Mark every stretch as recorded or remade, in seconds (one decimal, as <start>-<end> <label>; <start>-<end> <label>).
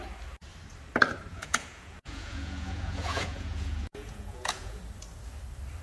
0.0-1.3 recorded; 1.3-4.8 remade; 4.8-5.8 recorded